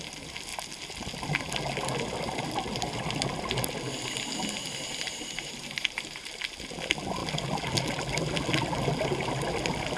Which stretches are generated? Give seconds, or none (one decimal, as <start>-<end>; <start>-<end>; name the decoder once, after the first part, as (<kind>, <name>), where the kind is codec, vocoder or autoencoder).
4.9-6.3 (vocoder, BigVGAN v2)